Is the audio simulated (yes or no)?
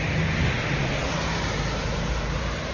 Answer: yes